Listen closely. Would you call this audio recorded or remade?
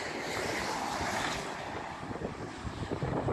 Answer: recorded